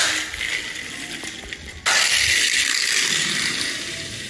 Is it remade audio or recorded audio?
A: recorded